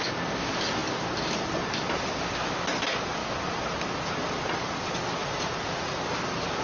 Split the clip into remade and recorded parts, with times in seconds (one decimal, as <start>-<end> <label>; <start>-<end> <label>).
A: 0.0-5.2 recorded; 5.2-6.0 remade; 6.0-6.6 recorded